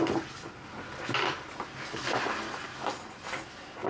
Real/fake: real